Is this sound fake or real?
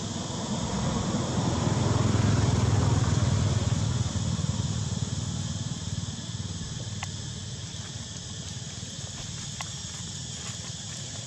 real